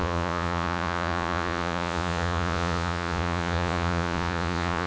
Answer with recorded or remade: remade